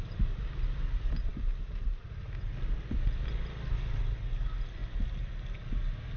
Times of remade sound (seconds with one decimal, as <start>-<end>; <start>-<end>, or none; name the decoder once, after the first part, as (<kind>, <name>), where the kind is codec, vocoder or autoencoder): none